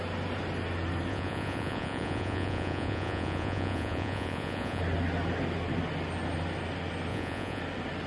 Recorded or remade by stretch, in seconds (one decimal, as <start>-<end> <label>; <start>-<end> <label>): 0.0-1.1 recorded; 1.1-4.8 remade; 4.8-7.1 recorded; 7.1-7.6 remade; 7.6-8.1 recorded